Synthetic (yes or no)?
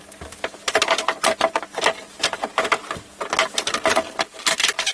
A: no